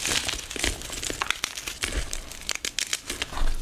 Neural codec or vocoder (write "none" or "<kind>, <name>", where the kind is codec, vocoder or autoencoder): none